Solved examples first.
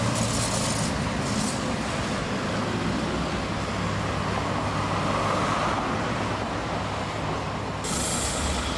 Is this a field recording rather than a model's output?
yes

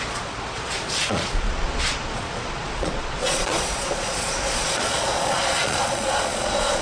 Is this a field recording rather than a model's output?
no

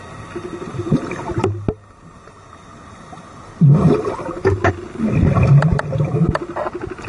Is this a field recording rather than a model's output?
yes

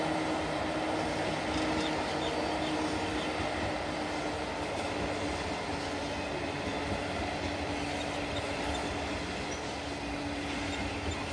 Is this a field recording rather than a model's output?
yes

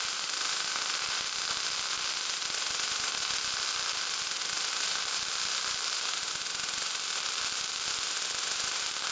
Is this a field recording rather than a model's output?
yes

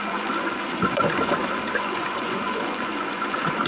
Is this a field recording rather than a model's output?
no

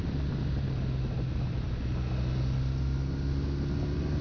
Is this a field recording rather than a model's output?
yes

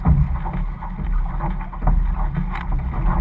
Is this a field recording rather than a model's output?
yes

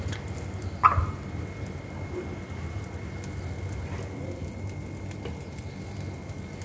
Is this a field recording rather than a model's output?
yes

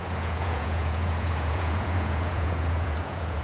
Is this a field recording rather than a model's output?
no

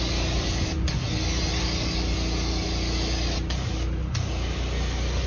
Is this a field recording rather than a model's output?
yes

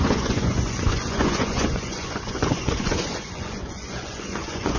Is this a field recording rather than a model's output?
no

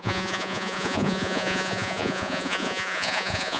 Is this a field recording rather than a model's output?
no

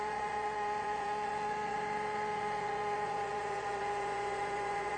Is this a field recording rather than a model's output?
no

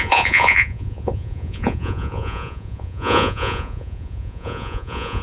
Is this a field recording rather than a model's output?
no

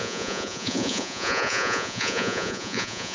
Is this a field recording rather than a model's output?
no